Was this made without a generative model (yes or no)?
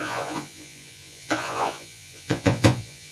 no